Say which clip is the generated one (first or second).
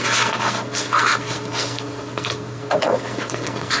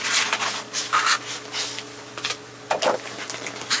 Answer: first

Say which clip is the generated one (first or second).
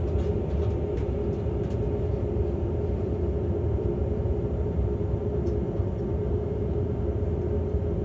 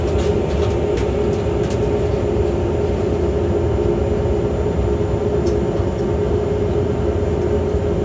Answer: first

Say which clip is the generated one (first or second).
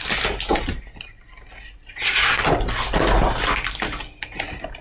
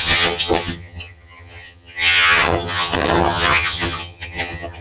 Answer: second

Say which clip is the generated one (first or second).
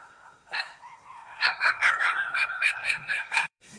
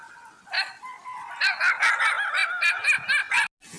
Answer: first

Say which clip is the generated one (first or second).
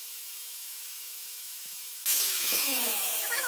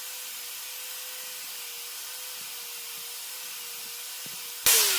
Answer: first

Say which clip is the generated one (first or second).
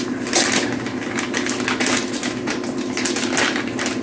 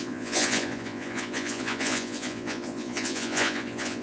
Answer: second